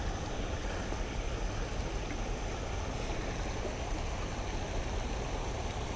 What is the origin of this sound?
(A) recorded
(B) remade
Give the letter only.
A